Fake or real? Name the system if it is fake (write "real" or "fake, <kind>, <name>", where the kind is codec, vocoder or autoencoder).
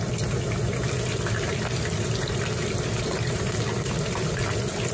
real